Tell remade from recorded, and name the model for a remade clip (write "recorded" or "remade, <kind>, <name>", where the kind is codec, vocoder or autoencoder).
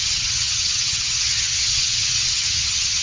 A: remade, vocoder, HiFi-GAN